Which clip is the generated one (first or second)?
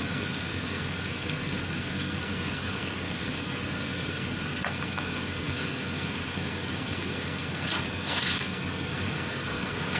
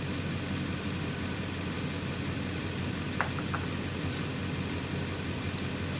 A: first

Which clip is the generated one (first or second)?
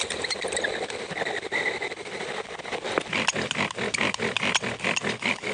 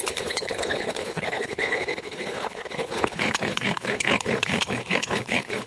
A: second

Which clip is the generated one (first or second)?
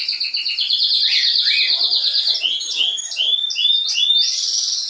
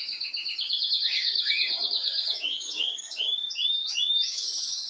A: second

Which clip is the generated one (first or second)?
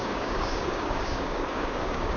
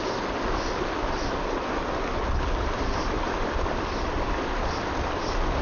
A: first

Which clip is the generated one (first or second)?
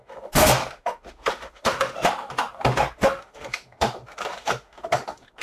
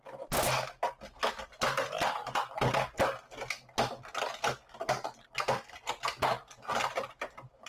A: first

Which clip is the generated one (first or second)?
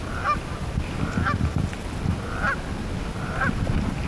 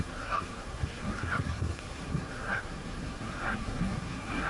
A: second